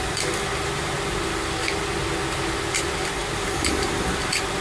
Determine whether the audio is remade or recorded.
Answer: recorded